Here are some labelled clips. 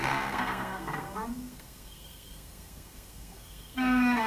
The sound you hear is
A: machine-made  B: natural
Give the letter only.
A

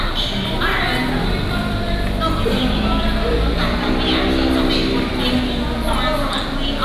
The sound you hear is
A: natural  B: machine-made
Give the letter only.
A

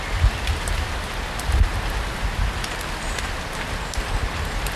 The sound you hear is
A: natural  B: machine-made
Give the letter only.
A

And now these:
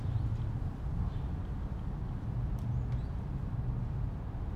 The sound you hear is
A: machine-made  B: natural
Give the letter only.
B